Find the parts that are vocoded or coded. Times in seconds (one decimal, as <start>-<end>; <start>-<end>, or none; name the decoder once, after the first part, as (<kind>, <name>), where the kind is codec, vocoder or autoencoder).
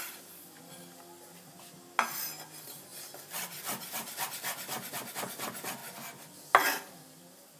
none